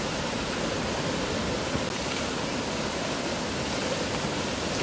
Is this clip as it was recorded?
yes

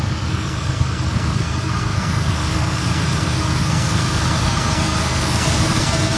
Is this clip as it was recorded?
no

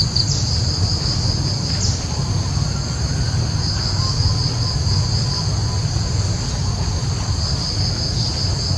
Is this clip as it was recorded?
yes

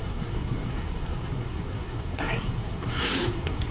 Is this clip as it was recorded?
no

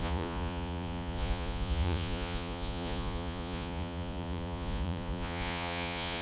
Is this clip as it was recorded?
no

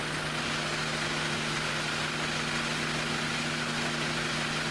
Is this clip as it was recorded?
yes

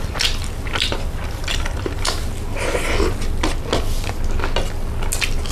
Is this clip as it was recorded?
yes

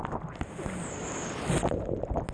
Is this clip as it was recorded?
yes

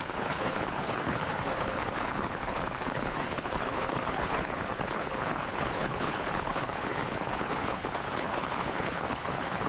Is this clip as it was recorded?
no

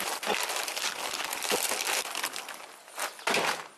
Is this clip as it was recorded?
yes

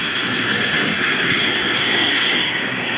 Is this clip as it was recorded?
no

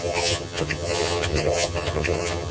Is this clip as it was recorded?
no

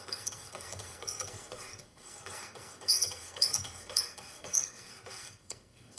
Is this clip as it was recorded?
no